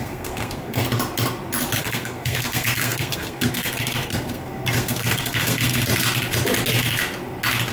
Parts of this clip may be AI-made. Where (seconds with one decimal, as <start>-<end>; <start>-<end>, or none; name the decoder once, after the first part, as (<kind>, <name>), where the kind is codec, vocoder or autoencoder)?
0.0-0.8 (codec, SNAC); 1.8-5.9